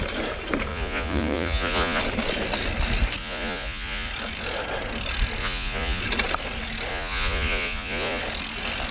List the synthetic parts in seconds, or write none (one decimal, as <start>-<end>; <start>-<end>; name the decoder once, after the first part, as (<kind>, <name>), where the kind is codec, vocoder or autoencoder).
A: 0.7-2.0 (vocoder, Vocos); 3.2-4.1; 5.4-6.0; 6.9-8.2